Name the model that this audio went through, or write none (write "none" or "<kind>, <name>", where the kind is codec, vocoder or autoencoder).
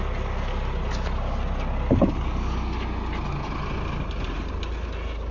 none